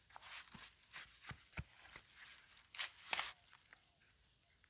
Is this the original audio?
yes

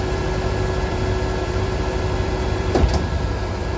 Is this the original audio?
no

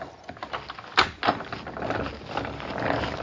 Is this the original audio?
yes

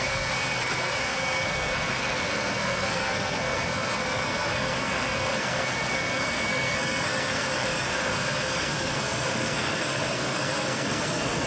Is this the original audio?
no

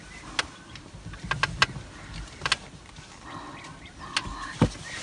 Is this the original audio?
yes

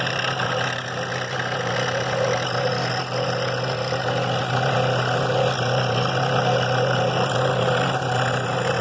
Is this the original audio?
yes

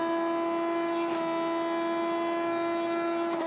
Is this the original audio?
yes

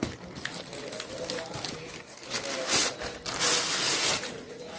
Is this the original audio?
yes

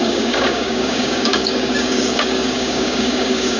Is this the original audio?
no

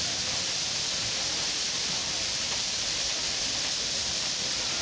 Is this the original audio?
no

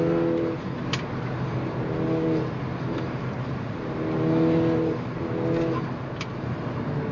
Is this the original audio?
yes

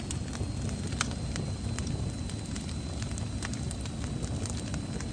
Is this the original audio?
yes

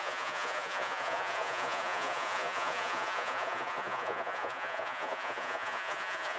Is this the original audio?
no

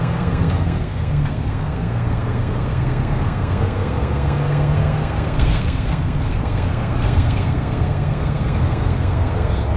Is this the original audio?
no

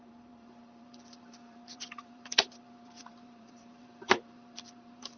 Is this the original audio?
no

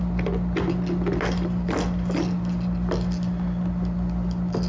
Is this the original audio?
yes